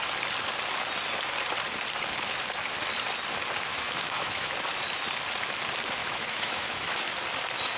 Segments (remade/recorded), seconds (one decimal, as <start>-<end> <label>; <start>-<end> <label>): 0.0-3.7 recorded; 3.7-4.5 remade; 4.5-6.0 recorded; 6.0-7.1 remade; 7.1-7.8 recorded